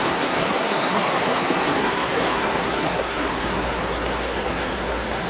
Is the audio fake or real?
fake